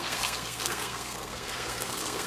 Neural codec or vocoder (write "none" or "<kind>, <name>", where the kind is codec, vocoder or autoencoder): codec, SNAC